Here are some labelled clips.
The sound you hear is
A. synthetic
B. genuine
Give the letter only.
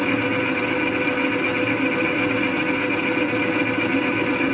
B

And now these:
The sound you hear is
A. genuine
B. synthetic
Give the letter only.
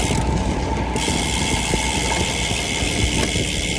A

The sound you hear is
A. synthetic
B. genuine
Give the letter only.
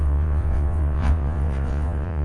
A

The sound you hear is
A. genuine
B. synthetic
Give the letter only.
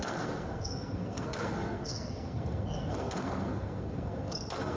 B